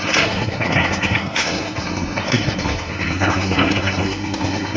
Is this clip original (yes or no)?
no